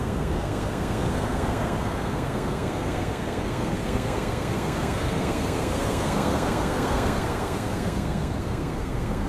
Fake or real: fake